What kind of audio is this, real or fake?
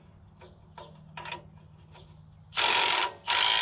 real